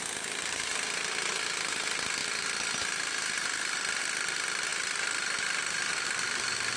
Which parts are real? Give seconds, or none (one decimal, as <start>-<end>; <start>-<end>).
0.0-0.7; 1.3-2.2; 4.0-6.8